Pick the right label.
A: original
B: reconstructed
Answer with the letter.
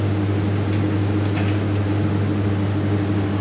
A